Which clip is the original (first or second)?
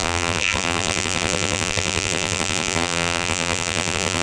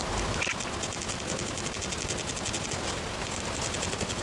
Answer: second